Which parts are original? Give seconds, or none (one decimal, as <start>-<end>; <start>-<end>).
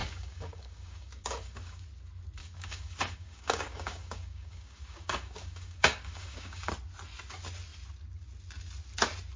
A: 1.8-2.4; 6.7-9.4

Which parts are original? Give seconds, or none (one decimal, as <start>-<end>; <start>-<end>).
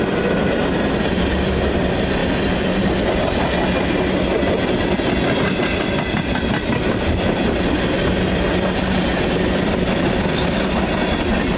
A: 0.0-11.6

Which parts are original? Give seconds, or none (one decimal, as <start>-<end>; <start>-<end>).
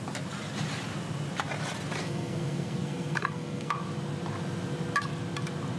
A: 0.0-2.0; 3.7-5.8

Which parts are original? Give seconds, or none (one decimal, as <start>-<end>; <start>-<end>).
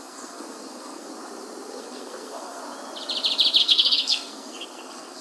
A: 1.1-1.7; 2.6-3.6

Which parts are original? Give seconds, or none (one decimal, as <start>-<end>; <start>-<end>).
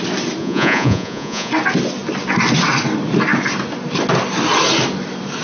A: 0.0-0.4; 1.5-5.4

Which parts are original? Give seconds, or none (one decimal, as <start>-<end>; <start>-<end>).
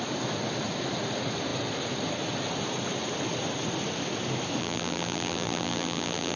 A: 0.0-4.6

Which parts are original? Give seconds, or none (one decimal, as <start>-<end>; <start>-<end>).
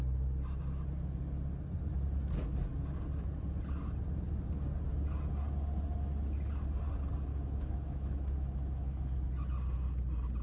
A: 0.0-7.3; 9.3-10.4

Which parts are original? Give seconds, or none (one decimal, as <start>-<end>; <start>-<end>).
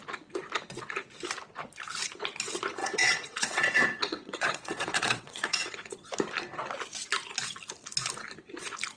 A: 0.0-2.8; 6.1-9.0